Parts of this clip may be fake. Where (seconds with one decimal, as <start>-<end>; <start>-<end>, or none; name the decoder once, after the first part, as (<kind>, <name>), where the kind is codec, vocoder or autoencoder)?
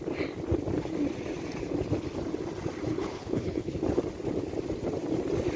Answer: 2.9-3.8 (codec, HILCodec)